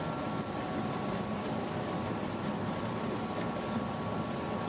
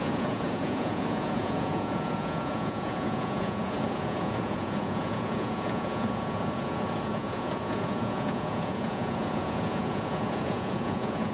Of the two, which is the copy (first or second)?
second